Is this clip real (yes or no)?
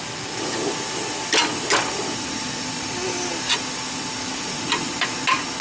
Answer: yes